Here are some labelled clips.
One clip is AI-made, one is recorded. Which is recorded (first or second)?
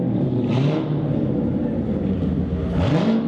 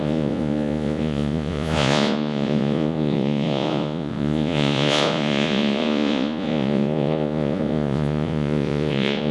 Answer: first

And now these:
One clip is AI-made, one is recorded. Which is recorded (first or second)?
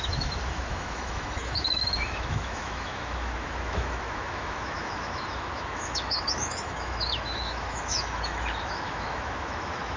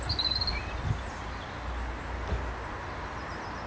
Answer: second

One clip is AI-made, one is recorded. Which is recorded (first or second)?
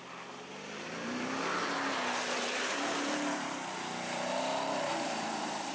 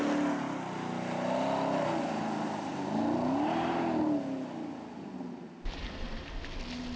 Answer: second